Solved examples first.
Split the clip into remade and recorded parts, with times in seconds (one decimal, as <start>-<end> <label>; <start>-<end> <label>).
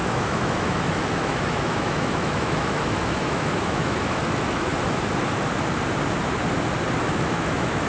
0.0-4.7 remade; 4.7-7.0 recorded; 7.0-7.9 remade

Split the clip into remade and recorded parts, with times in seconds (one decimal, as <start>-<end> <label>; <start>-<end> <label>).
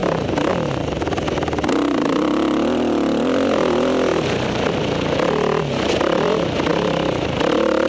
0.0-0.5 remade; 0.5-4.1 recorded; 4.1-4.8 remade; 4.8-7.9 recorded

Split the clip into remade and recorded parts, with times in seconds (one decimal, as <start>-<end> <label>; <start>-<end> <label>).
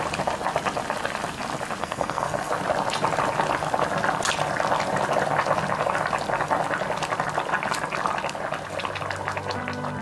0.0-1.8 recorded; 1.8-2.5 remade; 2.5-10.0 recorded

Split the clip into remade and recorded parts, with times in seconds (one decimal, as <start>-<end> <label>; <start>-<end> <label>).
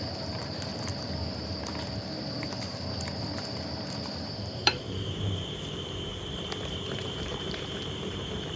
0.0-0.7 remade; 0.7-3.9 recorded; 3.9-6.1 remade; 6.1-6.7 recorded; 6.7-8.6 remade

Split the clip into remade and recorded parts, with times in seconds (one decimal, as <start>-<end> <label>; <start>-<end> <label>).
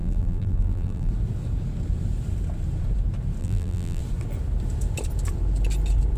0.0-1.1 remade; 1.1-3.4 recorded; 3.4-4.0 remade; 4.0-6.2 recorded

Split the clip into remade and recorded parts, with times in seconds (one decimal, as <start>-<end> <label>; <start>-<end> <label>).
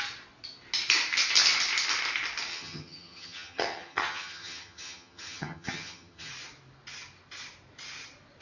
0.0-2.5 recorded; 2.5-6.3 remade; 6.3-8.4 recorded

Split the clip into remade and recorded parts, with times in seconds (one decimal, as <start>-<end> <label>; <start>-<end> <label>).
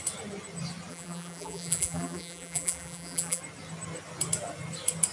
0.0-0.9 recorded; 0.9-3.4 remade; 3.4-5.1 recorded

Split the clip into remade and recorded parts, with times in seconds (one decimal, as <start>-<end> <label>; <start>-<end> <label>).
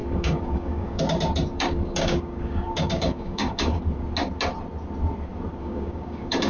0.0-1.0 remade; 1.0-1.5 recorded; 1.5-3.8 remade; 3.8-5.6 recorded; 5.6-6.5 remade